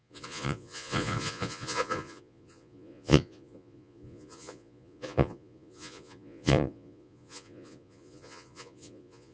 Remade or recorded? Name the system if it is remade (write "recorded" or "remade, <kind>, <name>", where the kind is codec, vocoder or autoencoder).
remade, vocoder, Vocos